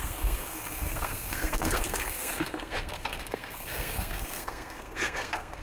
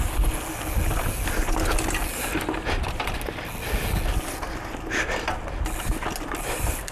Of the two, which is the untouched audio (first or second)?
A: second